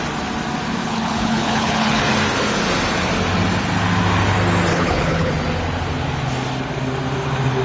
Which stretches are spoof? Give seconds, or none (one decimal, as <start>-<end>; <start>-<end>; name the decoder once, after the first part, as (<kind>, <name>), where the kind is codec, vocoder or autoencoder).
0.8-2.0 (codec, HILCodec); 4.7-5.3